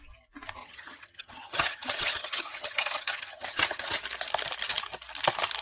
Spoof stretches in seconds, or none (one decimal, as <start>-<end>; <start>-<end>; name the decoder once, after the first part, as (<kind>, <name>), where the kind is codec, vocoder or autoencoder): 0.6-4.0 (vocoder, HiFi-GAN)